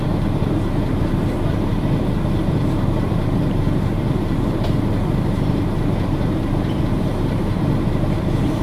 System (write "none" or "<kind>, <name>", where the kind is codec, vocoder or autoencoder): vocoder, BigVGAN v2